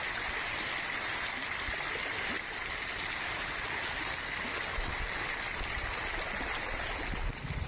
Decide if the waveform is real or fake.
real